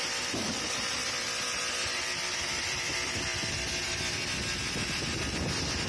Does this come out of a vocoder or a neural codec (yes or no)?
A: yes